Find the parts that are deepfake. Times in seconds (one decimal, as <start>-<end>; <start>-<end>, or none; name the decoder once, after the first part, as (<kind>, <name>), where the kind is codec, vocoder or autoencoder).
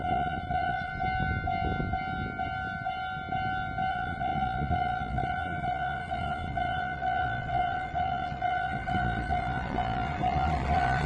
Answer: 0.0-0.9 (vocoder, Vocos); 3.9-11.1